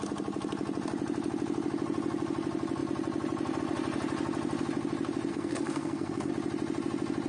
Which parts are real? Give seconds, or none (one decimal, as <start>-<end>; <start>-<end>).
0.0-5.3; 6.3-7.3